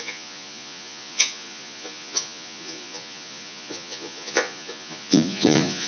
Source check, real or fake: fake